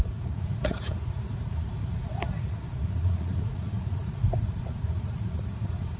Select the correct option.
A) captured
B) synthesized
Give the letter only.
B